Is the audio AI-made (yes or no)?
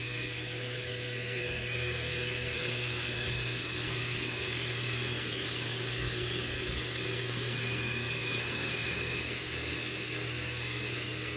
yes